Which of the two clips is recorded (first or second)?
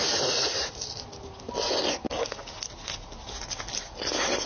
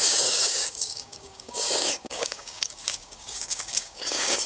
first